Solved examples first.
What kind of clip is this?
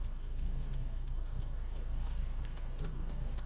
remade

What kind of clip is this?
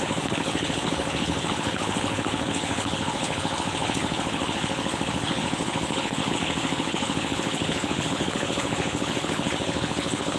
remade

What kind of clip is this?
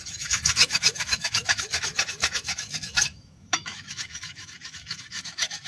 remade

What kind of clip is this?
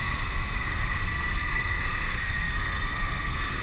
remade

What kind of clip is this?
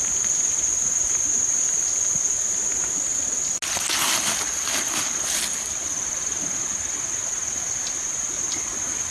recorded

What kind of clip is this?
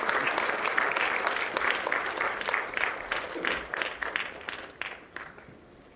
recorded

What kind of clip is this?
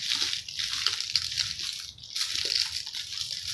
recorded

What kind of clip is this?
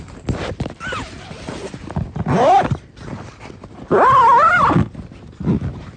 recorded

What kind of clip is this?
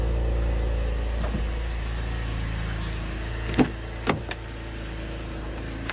recorded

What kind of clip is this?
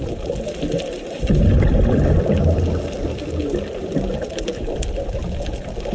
recorded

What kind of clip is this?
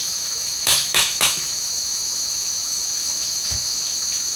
remade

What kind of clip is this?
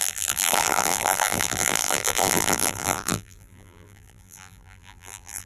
remade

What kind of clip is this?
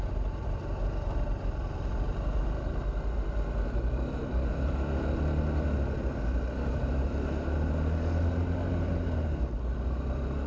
recorded